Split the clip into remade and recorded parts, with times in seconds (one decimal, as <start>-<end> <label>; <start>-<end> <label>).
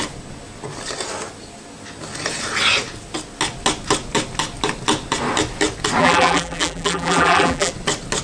0.0-6.0 recorded; 6.0-7.7 remade; 7.7-8.2 recorded